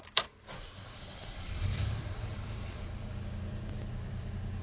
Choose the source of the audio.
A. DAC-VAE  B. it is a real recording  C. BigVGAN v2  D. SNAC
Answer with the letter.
C